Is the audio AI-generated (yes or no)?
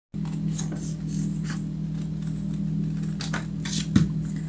no